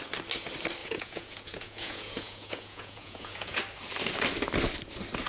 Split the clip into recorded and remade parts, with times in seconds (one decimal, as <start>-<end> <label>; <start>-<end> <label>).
0.0-0.8 recorded; 0.8-3.6 remade; 3.6-5.3 recorded